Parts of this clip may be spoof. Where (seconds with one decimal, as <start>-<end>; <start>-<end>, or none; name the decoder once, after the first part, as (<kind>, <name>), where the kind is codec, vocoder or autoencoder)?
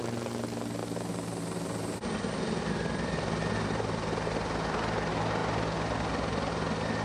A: none